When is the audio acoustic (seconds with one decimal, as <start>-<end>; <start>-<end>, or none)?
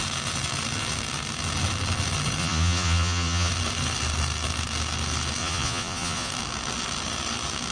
0.0-2.4; 3.5-5.4; 6.3-7.7